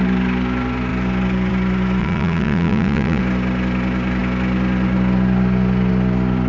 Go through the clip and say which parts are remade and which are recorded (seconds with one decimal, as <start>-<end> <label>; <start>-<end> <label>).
0.0-2.0 recorded; 2.0-3.2 remade; 3.2-6.5 recorded